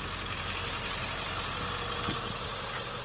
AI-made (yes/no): no